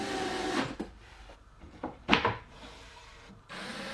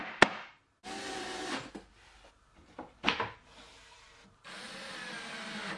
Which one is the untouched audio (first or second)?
second